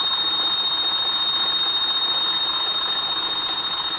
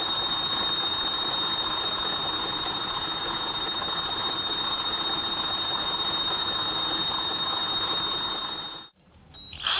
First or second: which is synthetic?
second